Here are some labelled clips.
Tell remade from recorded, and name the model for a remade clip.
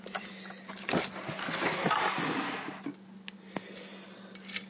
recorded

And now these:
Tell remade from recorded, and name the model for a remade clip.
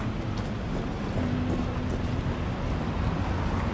recorded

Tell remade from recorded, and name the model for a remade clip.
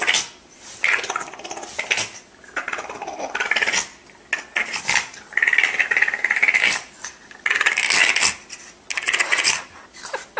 recorded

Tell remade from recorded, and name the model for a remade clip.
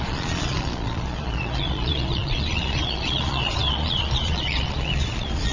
remade, vocoder, Vocos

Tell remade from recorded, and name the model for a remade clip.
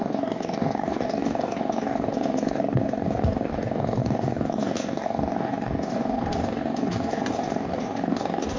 remade, codec, DAC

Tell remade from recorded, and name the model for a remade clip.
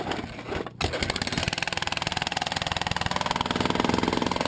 recorded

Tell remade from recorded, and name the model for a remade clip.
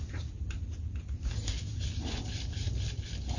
recorded